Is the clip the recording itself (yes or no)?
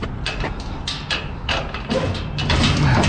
yes